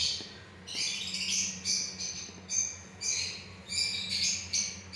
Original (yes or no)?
yes